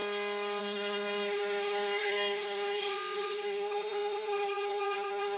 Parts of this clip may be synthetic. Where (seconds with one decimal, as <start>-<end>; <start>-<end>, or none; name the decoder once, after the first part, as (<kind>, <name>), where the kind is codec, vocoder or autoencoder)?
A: 0.6-5.4 (codec, SNAC)